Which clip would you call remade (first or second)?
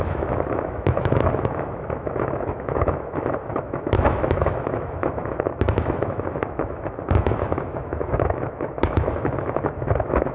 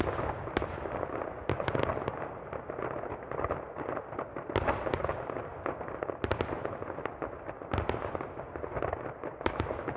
first